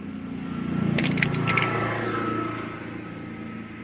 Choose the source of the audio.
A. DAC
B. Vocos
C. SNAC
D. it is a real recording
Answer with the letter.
D